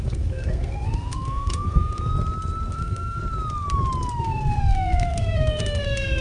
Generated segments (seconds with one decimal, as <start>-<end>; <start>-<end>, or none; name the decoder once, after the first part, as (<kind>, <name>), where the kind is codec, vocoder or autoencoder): 0.0-2.1 (codec, SNAC); 2.7-3.2; 4.2-6.2